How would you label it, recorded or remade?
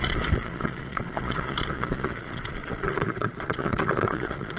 remade